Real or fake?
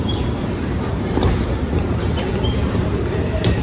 fake